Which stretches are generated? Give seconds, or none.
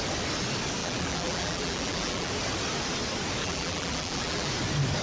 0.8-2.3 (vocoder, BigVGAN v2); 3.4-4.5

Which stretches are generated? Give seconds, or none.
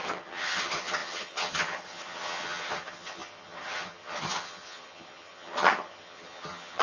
0.0-6.8 (vocoder, HiFi-GAN)